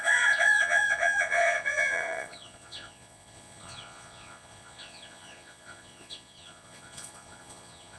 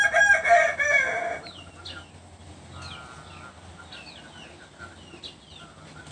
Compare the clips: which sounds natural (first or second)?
second